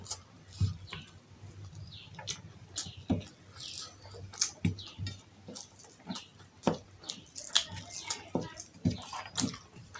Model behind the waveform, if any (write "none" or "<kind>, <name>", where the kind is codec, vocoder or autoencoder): none